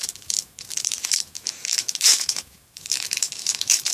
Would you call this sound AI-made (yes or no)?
yes